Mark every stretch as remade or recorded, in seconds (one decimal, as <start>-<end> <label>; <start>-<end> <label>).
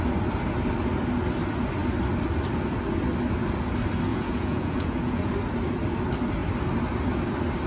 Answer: 0.0-4.1 recorded; 4.1-5.3 remade; 5.3-7.7 recorded